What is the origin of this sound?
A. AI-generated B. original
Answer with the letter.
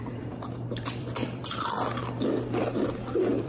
A